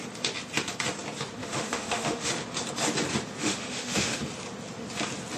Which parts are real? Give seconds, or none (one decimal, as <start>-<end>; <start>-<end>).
0.0-1.4; 2.3-3.4; 4.2-5.4